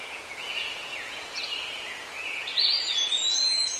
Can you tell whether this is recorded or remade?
remade